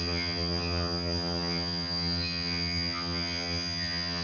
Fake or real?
fake